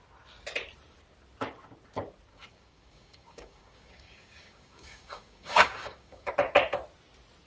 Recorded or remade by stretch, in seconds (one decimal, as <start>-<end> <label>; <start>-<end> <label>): 0.0-2.3 recorded; 2.3-6.3 remade; 6.3-7.5 recorded